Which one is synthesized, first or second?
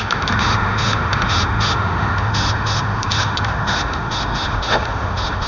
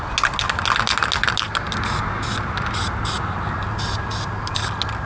first